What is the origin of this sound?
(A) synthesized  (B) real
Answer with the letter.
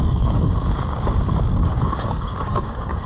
A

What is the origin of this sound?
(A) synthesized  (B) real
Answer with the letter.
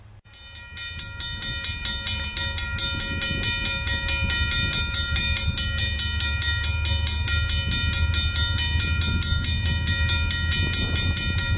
B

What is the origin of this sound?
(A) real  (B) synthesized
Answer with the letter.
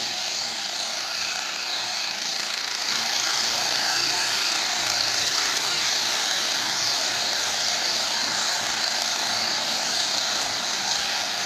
B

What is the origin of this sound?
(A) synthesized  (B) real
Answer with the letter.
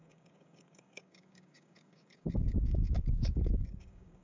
A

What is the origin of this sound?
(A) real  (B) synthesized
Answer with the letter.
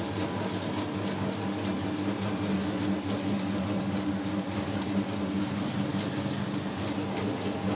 A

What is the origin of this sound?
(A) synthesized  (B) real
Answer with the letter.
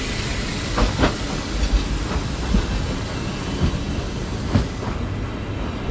B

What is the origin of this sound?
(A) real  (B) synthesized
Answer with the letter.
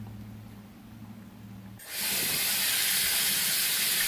A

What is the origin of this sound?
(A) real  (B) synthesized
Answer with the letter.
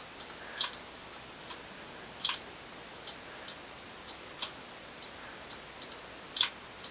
A